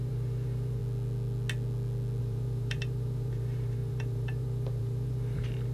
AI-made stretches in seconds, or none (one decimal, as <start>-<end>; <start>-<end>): 0.0-0.8; 2.2-5.7